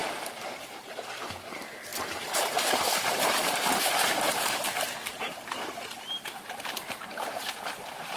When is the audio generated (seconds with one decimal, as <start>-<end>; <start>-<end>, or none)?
0.0-8.2

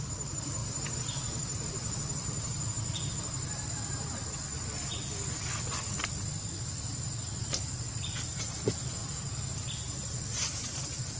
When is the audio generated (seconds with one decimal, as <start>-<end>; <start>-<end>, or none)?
0.0-4.5; 6.1-9.0; 9.6-11.2

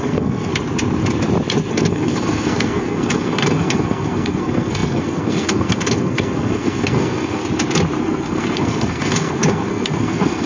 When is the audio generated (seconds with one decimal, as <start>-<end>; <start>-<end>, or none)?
0.0-0.5; 1.7-7.4; 8.0-10.5

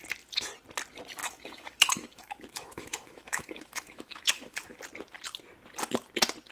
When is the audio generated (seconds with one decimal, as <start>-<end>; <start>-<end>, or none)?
1.2-4.8

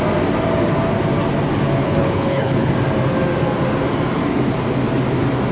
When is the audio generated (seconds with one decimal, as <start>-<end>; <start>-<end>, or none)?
1.8-2.7

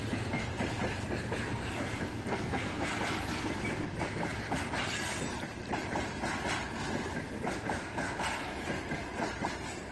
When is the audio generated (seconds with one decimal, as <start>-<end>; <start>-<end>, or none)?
2.3-2.9

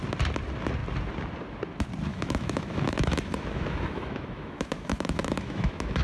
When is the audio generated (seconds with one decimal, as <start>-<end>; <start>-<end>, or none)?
2.1-6.0